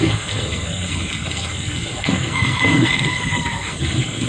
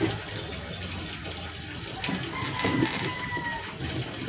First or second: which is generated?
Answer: first